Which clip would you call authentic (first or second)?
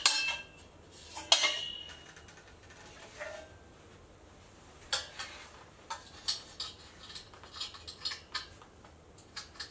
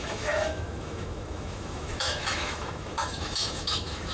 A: first